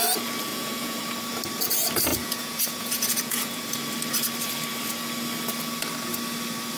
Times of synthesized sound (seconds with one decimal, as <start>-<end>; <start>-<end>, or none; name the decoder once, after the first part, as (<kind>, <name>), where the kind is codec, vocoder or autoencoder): 0.5-1.0 (vocoder, Vocos); 2.1-3.7